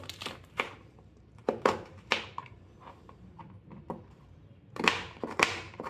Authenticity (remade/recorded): remade